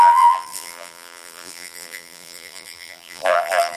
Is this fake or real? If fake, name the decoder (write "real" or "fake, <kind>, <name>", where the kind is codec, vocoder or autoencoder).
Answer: fake, vocoder, BigVGAN v2